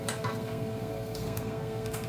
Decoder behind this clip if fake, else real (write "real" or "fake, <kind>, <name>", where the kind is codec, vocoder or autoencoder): fake, codec, SNAC